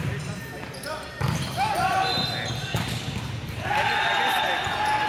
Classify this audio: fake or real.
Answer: real